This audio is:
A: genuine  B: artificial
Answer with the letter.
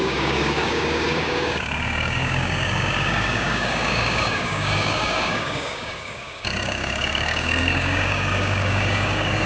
B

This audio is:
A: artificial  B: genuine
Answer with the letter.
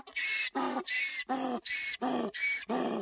B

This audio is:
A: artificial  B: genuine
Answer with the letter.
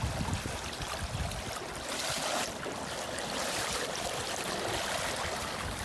B